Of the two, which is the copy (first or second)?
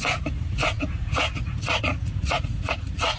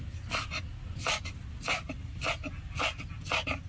first